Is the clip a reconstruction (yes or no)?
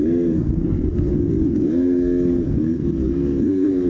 yes